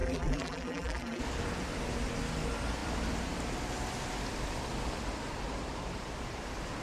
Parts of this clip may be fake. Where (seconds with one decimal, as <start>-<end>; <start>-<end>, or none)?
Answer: 0.0-1.2